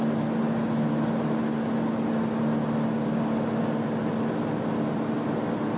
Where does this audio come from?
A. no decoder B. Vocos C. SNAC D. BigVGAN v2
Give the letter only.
A